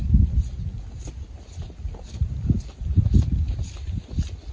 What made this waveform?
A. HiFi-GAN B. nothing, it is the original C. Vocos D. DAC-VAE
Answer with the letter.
B